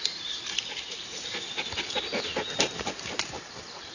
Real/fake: fake